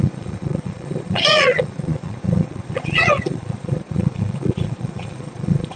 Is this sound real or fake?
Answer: fake